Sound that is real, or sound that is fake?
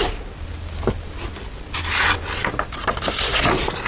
real